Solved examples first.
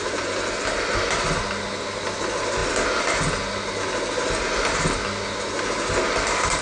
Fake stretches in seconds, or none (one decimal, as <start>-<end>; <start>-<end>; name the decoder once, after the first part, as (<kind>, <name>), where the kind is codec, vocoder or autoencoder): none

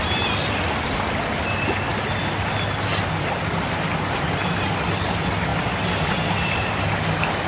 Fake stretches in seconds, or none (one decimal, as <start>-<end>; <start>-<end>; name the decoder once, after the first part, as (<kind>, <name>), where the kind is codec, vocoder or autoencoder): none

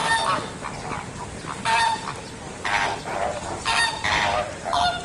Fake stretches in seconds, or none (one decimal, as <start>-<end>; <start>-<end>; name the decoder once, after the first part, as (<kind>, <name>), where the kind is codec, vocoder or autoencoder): none

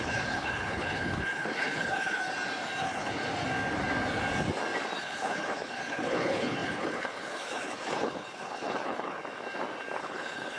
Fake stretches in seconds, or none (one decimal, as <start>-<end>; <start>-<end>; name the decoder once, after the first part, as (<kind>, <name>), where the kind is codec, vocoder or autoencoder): 0.0-2.2 (codec, HILCodec); 2.8-3.2; 5.0-9.2; 10.0-10.6

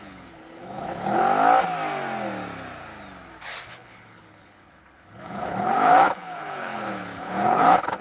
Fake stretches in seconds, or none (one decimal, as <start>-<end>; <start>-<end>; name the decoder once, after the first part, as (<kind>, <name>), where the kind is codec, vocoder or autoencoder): 0.0-1.2 (codec, HILCodec); 3.7-8.0

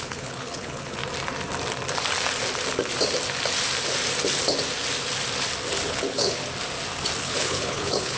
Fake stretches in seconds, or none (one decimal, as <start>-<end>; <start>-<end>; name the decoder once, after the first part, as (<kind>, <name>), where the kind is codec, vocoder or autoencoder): 0.0-1.0 (codec, HILCodec); 5.9-6.4; 7.2-8.2

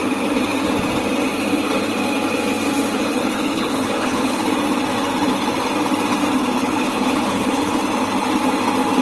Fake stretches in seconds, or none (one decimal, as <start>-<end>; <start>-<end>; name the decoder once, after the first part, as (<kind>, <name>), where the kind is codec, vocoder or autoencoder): 3.0-4.4 (codec, HILCodec); 6.6-7.8